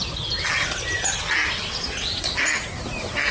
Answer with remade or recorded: recorded